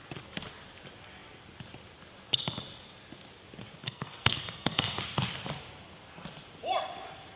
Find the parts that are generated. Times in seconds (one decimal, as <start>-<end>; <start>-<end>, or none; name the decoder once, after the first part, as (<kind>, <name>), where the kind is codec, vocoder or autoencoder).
3.8-5.0 (codec, SNAC)